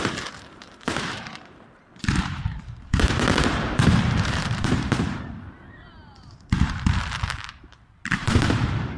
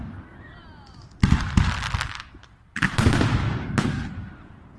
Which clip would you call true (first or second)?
second